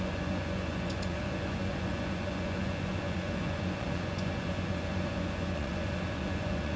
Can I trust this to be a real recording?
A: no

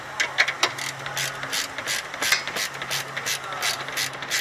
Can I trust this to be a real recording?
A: yes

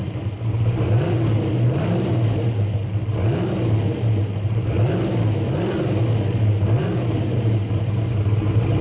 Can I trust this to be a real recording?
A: yes